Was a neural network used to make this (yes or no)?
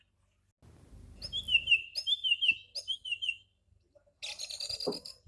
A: no